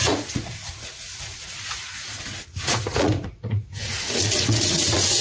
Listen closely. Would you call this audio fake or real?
fake